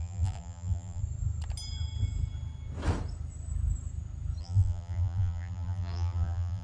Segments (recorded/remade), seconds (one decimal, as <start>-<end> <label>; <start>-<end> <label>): 0.0-1.0 remade; 1.0-4.4 recorded; 4.4-6.6 remade